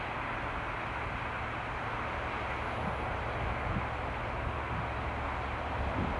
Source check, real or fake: real